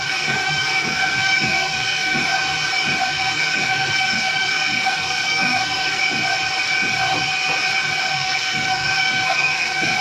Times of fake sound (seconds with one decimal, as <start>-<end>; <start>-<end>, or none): 0.0-2.2; 3.0-6.0; 8.0-10.0